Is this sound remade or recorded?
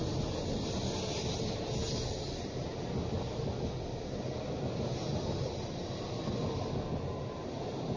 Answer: recorded